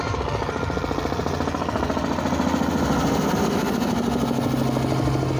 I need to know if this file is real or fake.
real